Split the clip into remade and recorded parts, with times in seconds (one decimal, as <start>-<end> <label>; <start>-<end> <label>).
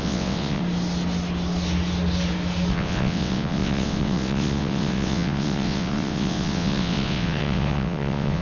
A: 0.0-0.6 remade; 0.6-2.7 recorded; 2.7-8.4 remade